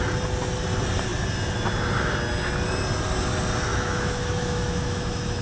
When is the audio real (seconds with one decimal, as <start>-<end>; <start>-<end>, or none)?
0.0-3.7